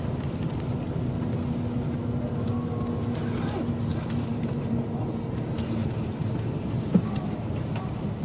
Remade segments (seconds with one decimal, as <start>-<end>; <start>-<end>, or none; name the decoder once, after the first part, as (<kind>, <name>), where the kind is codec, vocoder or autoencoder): 3.9-4.8 (vocoder, BigVGAN v2); 5.8-7.2